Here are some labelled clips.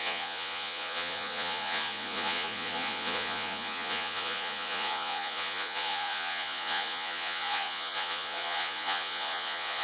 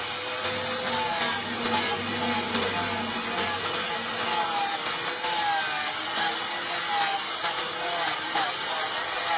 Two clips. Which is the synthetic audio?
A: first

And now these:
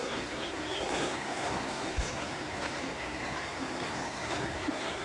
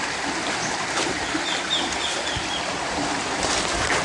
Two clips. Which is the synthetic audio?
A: first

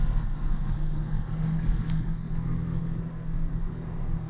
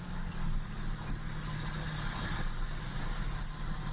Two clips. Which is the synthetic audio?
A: first